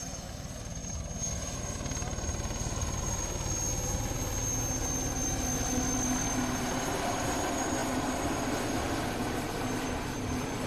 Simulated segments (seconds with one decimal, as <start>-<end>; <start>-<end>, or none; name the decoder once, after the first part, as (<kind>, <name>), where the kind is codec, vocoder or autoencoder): none